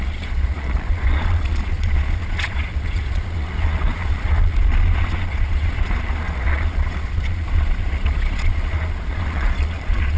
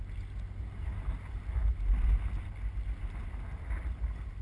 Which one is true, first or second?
second